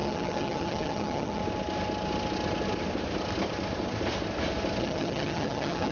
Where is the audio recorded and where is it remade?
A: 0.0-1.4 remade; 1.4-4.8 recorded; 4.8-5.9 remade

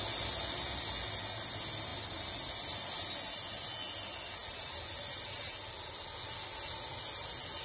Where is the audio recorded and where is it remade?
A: 0.0-7.6 recorded

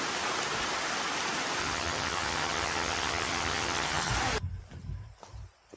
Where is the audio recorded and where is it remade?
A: 0.0-1.6 recorded; 1.6-4.1 remade; 4.1-5.8 recorded

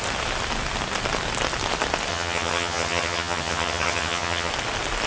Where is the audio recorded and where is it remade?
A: 0.0-2.1 recorded; 2.1-4.5 remade; 4.5-5.1 recorded